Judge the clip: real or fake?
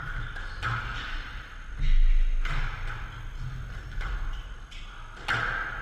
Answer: real